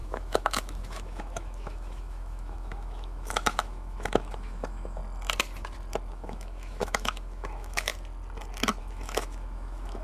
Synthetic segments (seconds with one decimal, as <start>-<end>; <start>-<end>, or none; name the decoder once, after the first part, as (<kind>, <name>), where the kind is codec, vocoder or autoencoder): 0.0-5.0 (autoencoder, DAC-VAE); 6.1-7.9; 8.8-10.0